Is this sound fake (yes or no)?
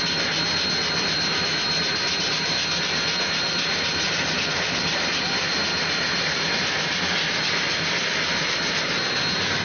no